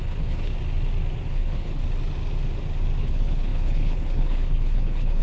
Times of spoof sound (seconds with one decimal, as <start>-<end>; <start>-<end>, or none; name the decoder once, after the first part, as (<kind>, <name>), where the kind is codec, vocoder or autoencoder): 0.0-0.5 (codec, HILCodec); 1.3-1.8; 3.0-5.2